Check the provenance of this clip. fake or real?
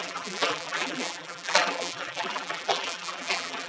fake